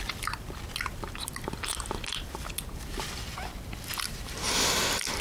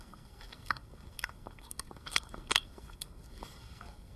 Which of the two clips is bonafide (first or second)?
first